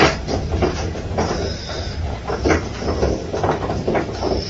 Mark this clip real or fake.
fake